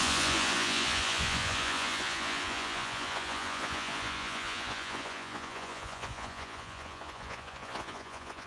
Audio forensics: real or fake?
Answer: fake